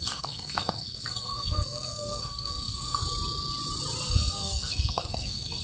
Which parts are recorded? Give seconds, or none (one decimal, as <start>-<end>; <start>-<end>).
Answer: 3.0-4.1